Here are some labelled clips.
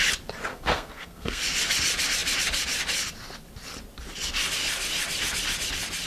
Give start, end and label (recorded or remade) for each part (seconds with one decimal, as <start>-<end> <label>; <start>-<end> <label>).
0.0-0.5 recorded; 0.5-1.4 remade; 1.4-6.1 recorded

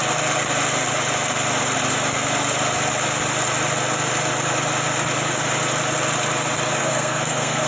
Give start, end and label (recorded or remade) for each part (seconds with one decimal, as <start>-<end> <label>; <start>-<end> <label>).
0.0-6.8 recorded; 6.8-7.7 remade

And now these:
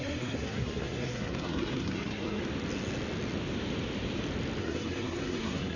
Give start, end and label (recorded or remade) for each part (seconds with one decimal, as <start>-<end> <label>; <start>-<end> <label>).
0.0-2.4 remade; 2.4-4.6 recorded; 4.6-5.8 remade

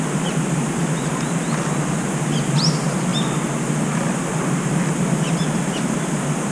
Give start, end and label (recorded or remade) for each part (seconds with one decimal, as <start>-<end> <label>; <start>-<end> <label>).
0.0-6.5 recorded